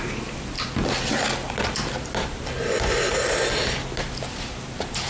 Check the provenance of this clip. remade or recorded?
recorded